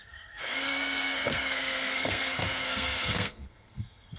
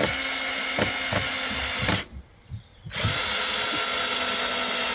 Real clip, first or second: second